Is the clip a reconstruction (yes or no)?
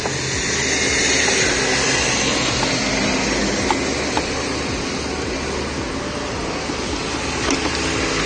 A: no